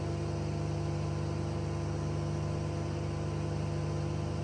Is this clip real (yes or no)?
yes